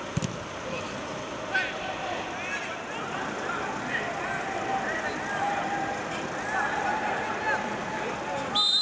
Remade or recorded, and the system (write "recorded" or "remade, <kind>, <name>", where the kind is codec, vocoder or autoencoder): recorded